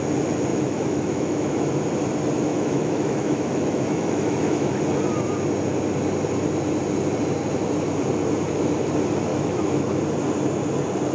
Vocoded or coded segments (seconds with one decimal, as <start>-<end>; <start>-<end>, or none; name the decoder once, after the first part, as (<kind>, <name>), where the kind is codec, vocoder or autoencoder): 0.5-1.7 (autoencoder, DAC-VAE); 2.5-4.8; 9.3-10.0